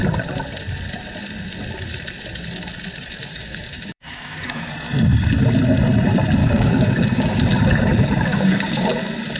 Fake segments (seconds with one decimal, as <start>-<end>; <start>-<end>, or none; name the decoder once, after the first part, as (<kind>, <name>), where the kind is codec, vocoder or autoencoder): 3.3-4.7 (codec, DAC); 6.4-7.4; 8.3-8.9